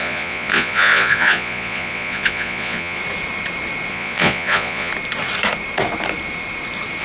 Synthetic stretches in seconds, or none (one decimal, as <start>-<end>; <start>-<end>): 0.0-3.0; 3.9-4.9